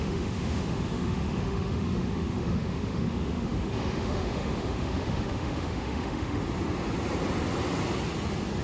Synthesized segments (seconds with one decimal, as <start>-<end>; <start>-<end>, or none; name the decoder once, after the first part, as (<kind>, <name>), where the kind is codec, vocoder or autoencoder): 0.0-6.4 (autoencoder, DAC-VAE)